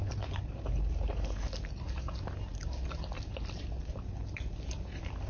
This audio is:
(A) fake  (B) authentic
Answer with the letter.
B